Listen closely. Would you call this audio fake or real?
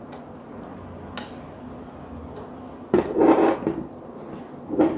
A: real